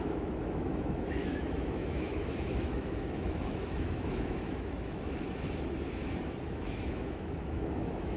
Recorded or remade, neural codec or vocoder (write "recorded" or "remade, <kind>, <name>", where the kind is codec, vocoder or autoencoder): remade, autoencoder, DAC-VAE